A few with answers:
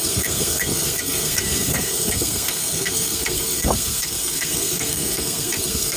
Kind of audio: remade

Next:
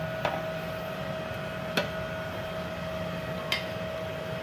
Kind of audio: recorded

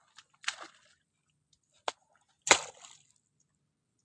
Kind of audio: recorded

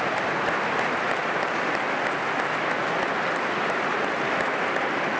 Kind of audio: recorded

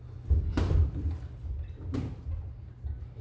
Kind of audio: recorded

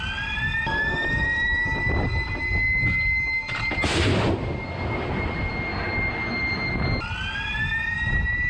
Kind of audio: recorded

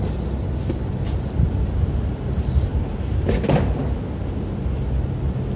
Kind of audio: recorded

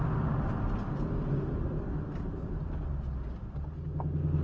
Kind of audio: recorded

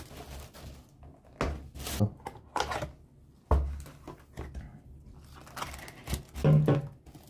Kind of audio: recorded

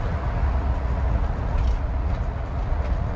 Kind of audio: remade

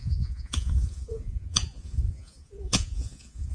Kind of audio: remade